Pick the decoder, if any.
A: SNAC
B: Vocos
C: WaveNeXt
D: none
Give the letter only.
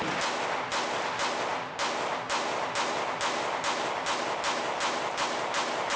D